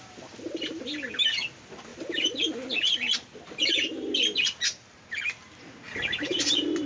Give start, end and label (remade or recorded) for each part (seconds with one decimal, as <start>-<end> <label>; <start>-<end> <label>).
0.0-6.9 recorded